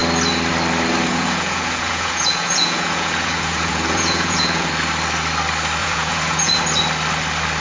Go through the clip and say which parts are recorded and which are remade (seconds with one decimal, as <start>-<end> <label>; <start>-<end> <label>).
0.0-1.1 recorded; 1.1-4.7 remade; 4.7-5.8 recorded; 5.8-6.6 remade; 6.6-7.6 recorded